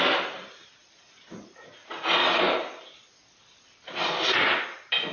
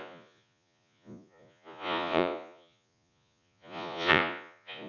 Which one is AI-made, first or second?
second